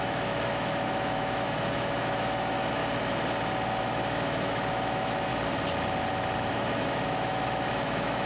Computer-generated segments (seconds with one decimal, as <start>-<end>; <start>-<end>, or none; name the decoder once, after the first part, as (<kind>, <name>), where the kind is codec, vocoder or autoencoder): 0.0-2.8 (autoencoder, DAC-VAE); 3.8-5.3; 6.5-8.3